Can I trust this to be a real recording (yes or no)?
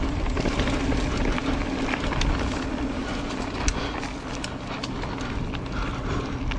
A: yes